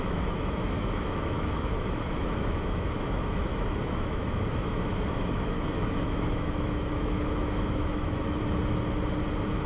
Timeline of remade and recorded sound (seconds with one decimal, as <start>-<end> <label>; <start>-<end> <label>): 0.0-8.4 remade; 8.4-9.7 recorded